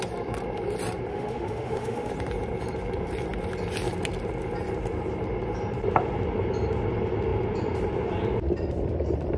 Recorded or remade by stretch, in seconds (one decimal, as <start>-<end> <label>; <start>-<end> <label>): 0.0-1.1 recorded; 1.1-2.1 remade; 2.1-9.4 recorded